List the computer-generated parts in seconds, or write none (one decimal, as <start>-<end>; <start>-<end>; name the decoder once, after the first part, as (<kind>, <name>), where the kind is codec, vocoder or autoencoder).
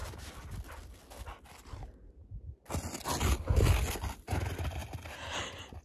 none